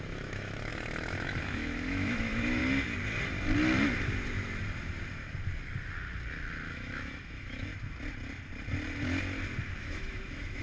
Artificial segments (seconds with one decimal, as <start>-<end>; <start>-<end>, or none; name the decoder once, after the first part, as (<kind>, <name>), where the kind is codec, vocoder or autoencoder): 0.0-2.6 (autoencoder, DAC-VAE); 6.7-7.7; 9.8-10.6